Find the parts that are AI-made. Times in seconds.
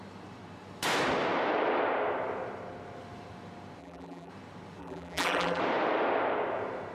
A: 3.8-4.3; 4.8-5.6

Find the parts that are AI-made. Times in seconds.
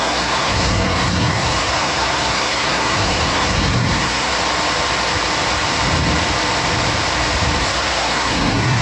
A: 0.0-4.3; 7.6-8.8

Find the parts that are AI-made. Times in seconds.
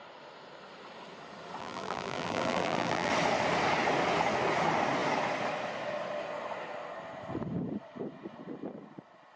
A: 1.6-3.1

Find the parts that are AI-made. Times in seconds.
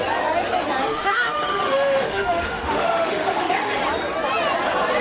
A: 0.8-3.8